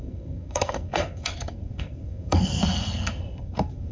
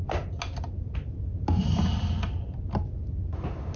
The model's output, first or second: first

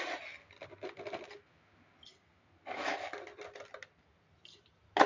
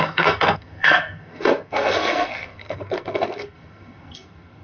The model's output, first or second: second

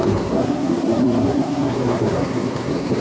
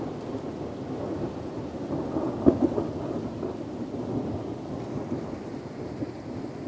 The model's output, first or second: first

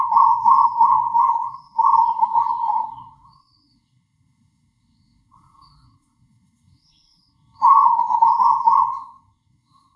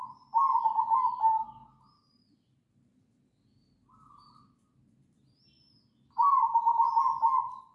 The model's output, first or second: first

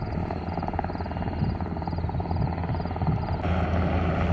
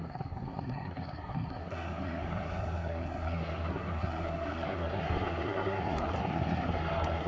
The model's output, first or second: second